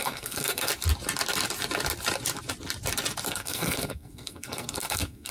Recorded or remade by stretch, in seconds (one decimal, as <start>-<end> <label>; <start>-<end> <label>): 0.0-0.7 remade; 0.7-3.3 recorded; 3.3-5.3 remade